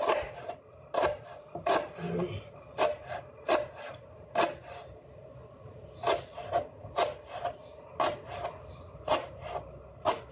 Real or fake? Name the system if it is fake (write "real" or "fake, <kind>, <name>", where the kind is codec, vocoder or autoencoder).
real